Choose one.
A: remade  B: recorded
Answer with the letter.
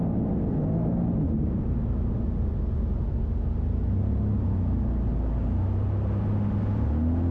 B